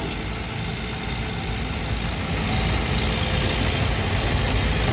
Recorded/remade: recorded